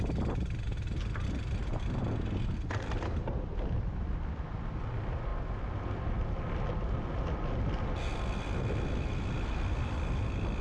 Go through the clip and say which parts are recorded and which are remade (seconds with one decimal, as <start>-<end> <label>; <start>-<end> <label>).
0.0-10.6 recorded